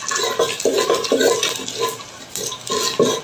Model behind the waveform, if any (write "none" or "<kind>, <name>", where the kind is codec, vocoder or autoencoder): none